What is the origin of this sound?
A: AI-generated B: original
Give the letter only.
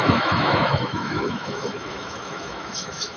A